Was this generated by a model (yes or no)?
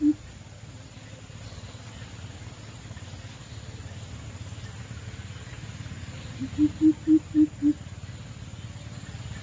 no